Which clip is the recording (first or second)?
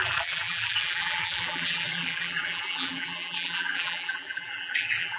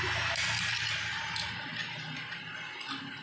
second